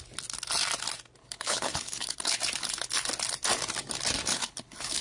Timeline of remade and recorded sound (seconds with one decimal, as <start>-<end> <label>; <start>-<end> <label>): 0.0-1.2 recorded; 1.2-2.4 remade; 2.4-4.3 recorded; 4.3-5.0 remade